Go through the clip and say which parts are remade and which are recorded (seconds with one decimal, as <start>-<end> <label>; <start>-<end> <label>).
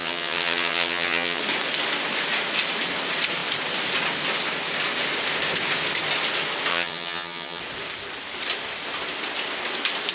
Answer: 0.0-1.4 remade; 1.4-6.7 recorded; 6.7-7.6 remade; 7.6-10.1 recorded